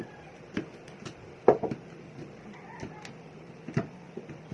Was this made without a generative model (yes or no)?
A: yes